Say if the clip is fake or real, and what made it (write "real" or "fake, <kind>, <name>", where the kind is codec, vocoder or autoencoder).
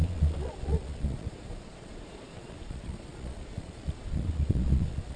fake, vocoder, Vocos